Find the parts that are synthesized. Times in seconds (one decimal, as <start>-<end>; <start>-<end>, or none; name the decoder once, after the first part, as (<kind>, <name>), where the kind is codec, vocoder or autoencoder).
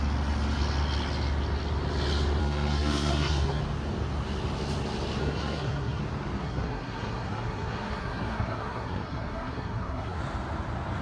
2.4-3.6 (codec, SNAC); 5.2-6.0; 6.4-10.2